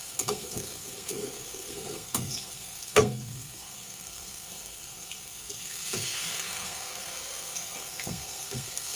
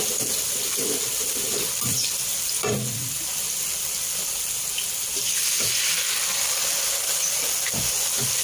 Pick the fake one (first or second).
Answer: first